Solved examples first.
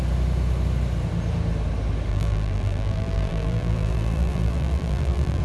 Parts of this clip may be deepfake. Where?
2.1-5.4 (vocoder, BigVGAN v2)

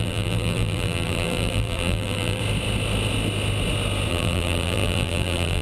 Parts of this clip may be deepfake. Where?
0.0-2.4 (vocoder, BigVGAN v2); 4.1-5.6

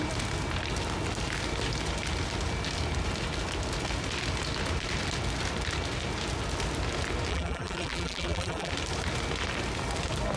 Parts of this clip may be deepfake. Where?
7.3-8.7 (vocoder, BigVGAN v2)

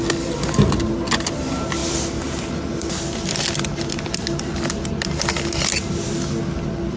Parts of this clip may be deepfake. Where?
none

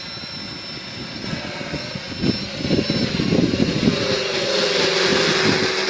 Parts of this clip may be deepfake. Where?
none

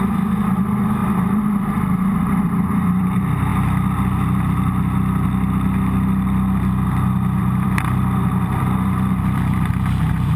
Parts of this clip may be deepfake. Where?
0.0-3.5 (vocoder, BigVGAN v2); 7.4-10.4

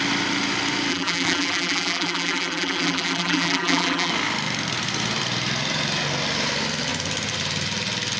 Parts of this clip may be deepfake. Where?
0.9-4.1 (vocoder, BigVGAN v2)